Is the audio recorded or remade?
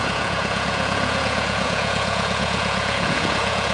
remade